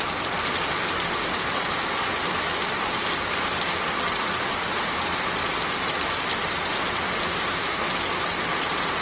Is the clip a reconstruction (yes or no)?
no